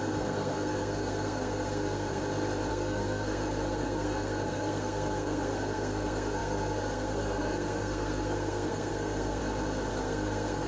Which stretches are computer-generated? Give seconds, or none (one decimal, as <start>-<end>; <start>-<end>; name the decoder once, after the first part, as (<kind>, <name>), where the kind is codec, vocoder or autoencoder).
0.0-2.2 (codec, SNAC); 2.7-9.4; 9.9-10.7